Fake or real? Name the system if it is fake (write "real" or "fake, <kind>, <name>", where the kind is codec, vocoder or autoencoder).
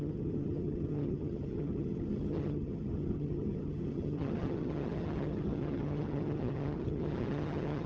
fake, vocoder, HiFi-GAN